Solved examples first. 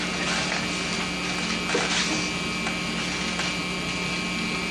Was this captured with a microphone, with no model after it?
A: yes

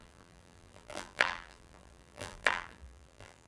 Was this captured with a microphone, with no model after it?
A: no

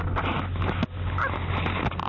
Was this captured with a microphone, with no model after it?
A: yes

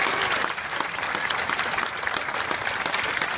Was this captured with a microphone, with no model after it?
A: yes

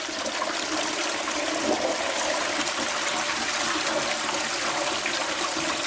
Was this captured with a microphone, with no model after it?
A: yes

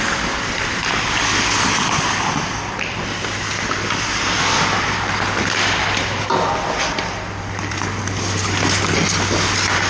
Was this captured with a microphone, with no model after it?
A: yes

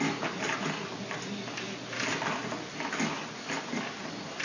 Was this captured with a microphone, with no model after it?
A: yes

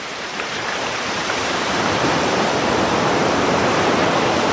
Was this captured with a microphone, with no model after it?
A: no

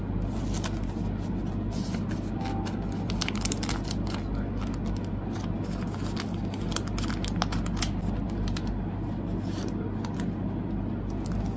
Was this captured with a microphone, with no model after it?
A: yes